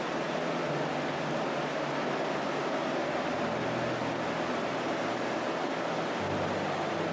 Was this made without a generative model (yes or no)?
yes